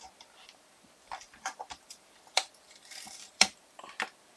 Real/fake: fake